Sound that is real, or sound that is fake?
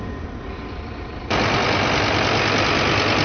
real